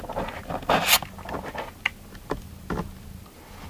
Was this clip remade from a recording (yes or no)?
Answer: no